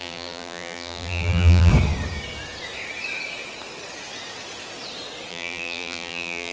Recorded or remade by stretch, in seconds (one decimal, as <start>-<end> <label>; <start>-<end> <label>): 0.0-1.7 remade; 1.7-5.3 recorded; 5.3-6.5 remade